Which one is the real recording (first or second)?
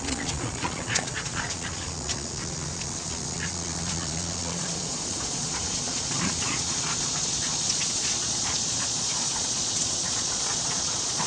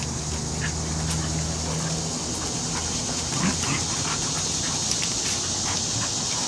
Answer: second